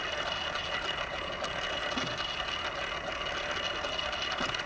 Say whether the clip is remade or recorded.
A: recorded